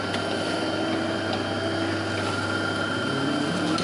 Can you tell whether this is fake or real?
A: real